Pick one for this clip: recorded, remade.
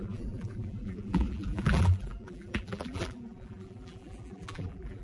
remade